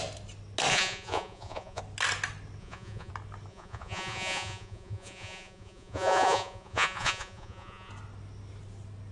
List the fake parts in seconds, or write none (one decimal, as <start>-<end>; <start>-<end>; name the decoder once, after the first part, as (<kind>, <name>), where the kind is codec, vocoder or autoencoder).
0.7-1.8 (vocoder, Vocos); 2.6-3.1; 3.5-7.9